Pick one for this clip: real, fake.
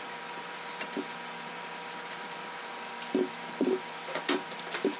fake